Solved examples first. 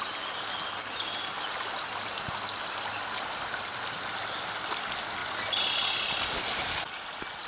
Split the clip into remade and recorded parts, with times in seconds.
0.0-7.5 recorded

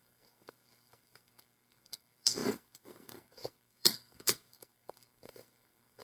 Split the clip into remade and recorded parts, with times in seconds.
0.0-6.0 remade

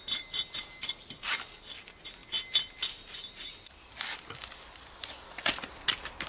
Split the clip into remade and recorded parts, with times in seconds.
0.0-6.3 recorded

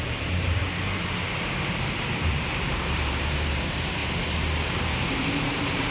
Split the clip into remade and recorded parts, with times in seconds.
0.0-0.6 remade; 0.6-1.9 recorded; 1.9-4.0 remade; 4.0-4.7 recorded; 4.7-5.9 remade

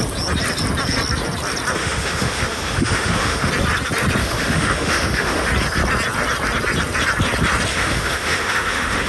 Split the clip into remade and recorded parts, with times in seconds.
0.0-1.8 recorded; 1.8-3.5 remade; 3.5-4.2 recorded; 4.2-5.5 remade; 5.5-7.7 recorded; 7.7-9.1 remade

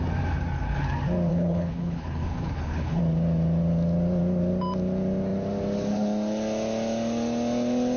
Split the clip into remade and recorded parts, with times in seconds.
0.0-1.3 recorded; 1.3-3.0 remade; 3.0-8.0 recorded

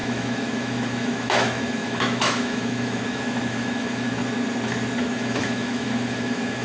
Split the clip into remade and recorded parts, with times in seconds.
0.0-4.2 remade; 4.2-5.0 recorded; 5.0-6.6 remade

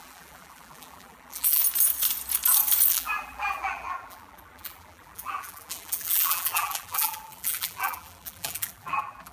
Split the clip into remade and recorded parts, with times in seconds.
0.0-1.6 remade; 1.6-2.9 recorded; 2.9-9.3 remade